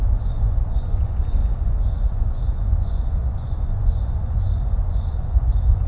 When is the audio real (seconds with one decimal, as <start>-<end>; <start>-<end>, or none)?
none